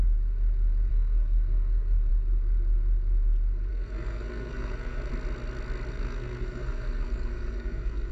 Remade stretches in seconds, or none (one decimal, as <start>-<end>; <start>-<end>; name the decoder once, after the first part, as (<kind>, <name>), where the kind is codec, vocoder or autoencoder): 0.9-2.1 (codec, SNAC); 3.7-5.1; 5.9-8.1